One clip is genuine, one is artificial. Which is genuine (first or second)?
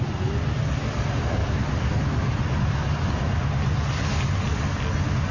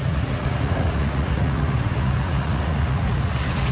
first